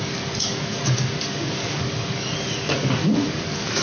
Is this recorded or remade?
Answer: remade